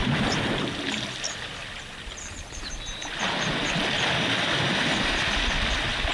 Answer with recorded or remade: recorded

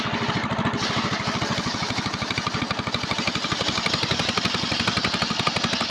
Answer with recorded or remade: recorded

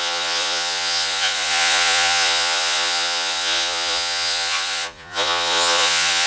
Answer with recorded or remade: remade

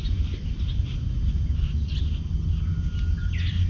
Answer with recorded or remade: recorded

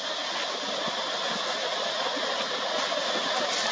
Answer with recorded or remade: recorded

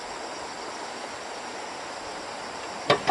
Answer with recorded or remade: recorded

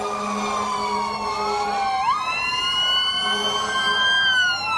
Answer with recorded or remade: recorded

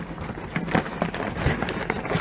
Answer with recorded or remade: recorded